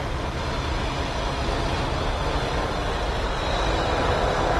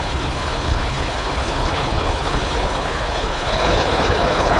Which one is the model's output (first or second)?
second